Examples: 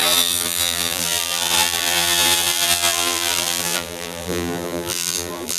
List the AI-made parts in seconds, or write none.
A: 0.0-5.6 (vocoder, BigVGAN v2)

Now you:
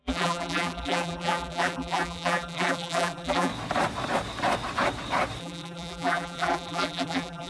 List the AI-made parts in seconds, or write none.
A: 0.0-3.5 (vocoder, BigVGAN v2); 5.4-7.5

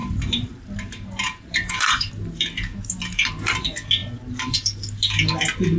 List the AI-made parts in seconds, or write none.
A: 0.0-2.1 (vocoder, BigVGAN v2)

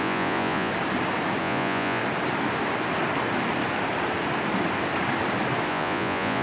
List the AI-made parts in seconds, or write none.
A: 0.0-0.7 (vocoder, Vocos); 1.4-2.0; 5.7-6.4

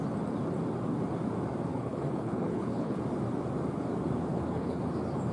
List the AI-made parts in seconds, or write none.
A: 1.7-3.0 (codec, HILCodec); 4.3-4.8

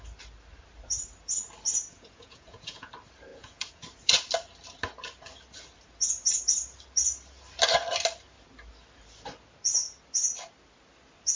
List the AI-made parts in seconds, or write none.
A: 1.9-2.9 (vocoder, Vocos); 3.3-3.8

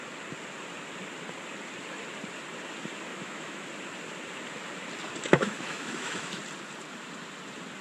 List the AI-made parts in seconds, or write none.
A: 3.1-3.7 (autoencoder, DAC-VAE); 5.3-6.4

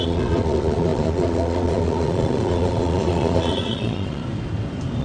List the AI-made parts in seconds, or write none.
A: 0.0-4.2 (vocoder, Vocos)